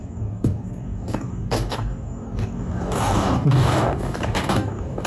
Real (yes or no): no